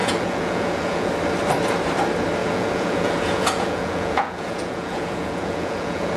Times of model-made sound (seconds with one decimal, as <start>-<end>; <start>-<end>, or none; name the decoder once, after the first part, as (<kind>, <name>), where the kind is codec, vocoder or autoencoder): 0.0-1.1 (vocoder, Vocos); 2.4-6.2